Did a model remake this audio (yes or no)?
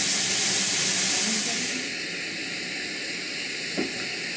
no